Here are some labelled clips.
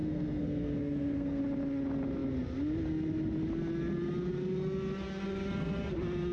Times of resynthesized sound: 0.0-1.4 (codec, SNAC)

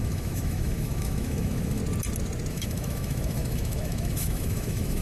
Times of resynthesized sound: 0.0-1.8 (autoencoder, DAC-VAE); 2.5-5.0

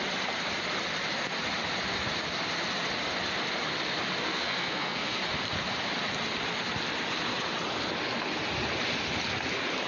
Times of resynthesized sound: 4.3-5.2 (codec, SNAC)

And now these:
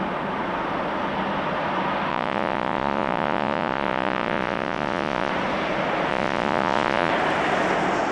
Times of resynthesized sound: 2.1-5.3 (vocoder, Vocos); 6.1-7.1

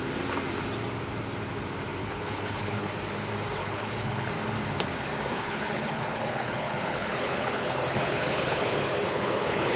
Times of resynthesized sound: 2.0-2.9 (codec, HILCodec); 3.6-4.3; 5.3-9.8

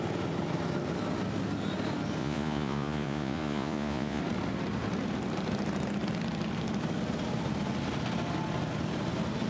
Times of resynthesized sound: 2.2-4.2 (vocoder, Vocos)

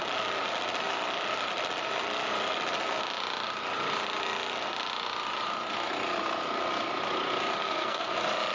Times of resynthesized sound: 7.6-8.1 (codec, SNAC)

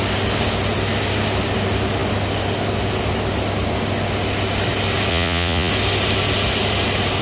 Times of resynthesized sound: 5.1-5.7 (vocoder, Vocos)